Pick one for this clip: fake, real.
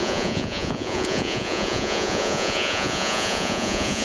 fake